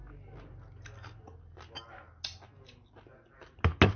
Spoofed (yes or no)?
no